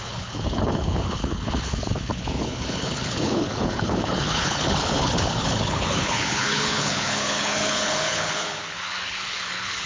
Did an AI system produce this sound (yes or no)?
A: yes